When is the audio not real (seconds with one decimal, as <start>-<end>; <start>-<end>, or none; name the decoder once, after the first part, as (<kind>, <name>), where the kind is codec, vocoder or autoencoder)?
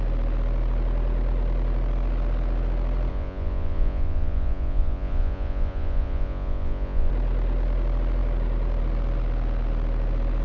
3.1-7.1 (vocoder, Vocos)